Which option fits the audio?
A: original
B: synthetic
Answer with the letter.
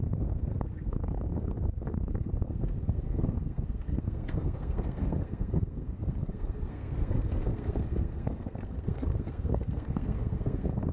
B